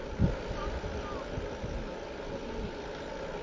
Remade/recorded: recorded